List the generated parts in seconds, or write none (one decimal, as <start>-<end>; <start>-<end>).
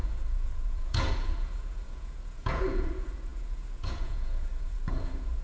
0.0-5.4